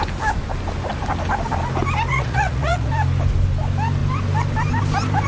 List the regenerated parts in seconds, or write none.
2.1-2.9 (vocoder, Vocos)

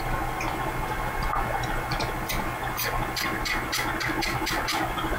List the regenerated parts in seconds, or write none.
4.3-5.2 (vocoder, BigVGAN v2)

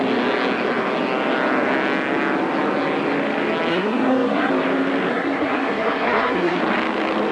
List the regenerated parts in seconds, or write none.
3.7-4.5 (codec, SNAC); 5.1-6.6